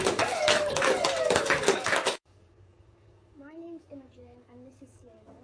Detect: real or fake fake